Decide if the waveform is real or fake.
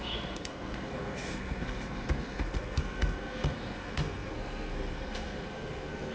fake